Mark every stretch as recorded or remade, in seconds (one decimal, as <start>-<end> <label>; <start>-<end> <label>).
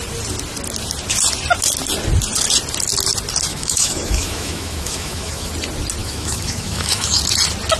0.0-3.5 recorded; 3.5-5.5 remade; 5.5-6.0 recorded; 6.0-7.2 remade; 7.2-7.8 recorded